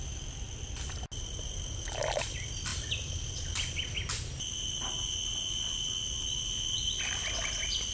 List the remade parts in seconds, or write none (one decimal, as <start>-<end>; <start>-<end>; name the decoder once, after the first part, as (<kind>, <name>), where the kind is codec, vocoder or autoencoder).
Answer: none